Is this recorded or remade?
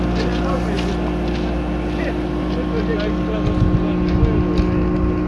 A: recorded